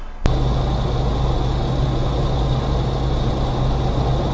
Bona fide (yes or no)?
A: yes